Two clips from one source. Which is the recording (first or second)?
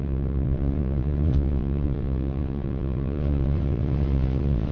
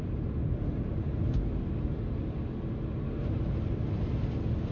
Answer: second